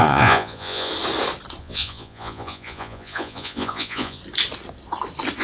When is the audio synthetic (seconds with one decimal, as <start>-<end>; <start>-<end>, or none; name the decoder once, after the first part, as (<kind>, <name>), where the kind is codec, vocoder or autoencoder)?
0.0-0.9 (vocoder, Vocos); 1.6-4.2